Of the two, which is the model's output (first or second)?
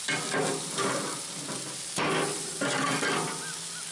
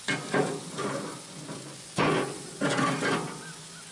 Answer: second